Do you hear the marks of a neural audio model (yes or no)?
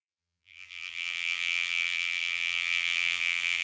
yes